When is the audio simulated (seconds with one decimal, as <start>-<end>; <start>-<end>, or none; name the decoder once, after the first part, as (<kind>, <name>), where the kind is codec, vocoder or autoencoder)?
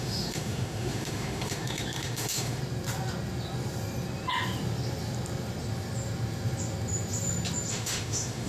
0.0-2.6 (autoencoder, DAC-VAE); 7.7-8.5